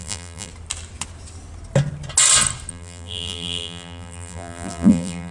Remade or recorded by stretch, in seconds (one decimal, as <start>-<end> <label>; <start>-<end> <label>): 0.0-0.5 remade; 0.5-2.7 recorded; 2.7-5.3 remade